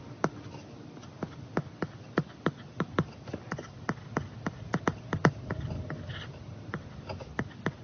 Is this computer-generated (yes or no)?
no